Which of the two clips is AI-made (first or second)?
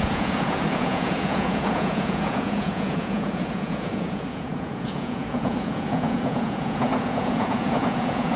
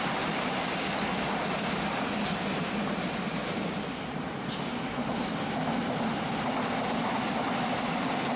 first